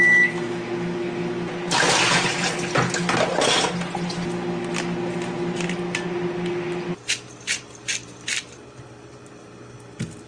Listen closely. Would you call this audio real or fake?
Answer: real